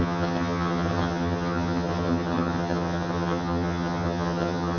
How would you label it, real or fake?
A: fake